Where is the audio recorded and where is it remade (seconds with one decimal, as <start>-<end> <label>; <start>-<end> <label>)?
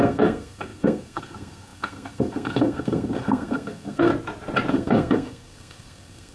0.0-4.1 remade; 4.1-4.7 recorded; 4.7-6.3 remade